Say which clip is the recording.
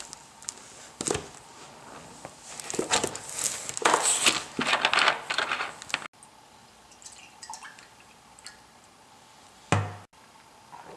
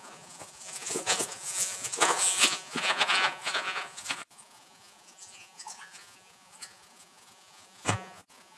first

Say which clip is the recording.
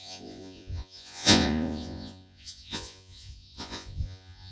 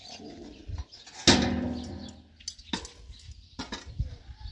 second